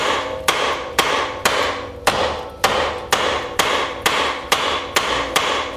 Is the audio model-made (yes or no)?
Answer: no